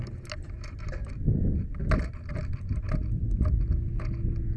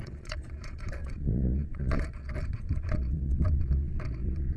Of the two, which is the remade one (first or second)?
second